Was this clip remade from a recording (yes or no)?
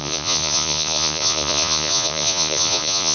yes